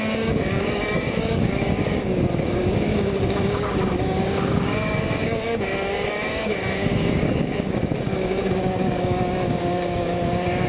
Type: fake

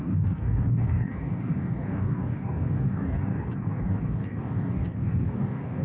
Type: fake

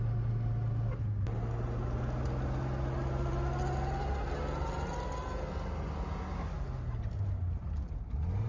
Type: real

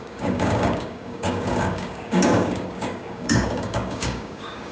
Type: fake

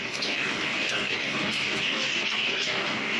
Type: fake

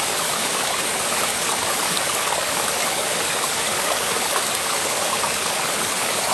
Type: fake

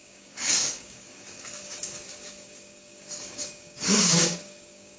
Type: fake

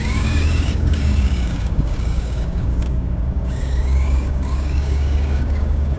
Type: fake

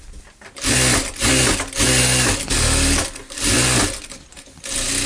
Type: real